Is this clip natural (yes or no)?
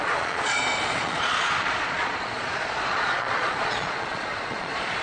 no